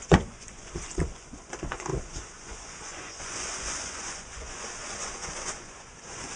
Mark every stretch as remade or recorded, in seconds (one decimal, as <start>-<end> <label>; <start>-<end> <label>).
0.0-6.4 remade